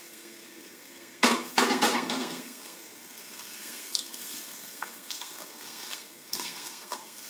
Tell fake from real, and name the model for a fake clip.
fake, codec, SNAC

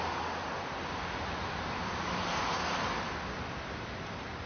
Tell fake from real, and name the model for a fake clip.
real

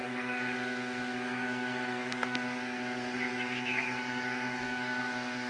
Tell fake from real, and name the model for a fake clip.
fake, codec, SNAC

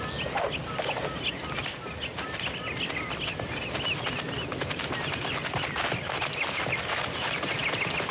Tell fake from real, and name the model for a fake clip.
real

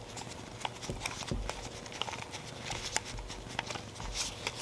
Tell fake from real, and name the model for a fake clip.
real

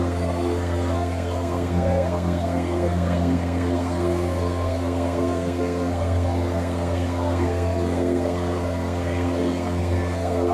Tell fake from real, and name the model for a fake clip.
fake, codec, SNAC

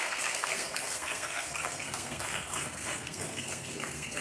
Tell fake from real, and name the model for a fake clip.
fake, codec, SNAC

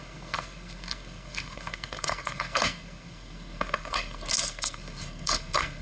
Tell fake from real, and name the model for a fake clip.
fake, codec, SNAC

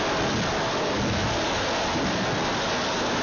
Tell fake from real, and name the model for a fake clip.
real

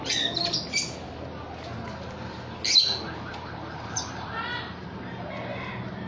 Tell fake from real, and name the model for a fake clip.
real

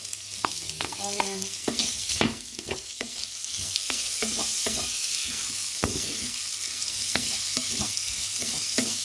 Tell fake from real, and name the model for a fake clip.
fake, codec, SNAC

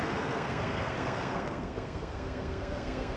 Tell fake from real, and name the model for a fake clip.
fake, codec, SNAC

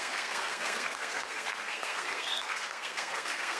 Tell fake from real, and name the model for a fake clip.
fake, codec, SNAC